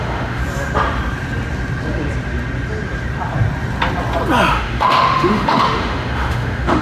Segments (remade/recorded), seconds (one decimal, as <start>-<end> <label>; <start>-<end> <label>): 0.0-0.4 remade; 0.4-4.5 recorded; 4.5-6.8 remade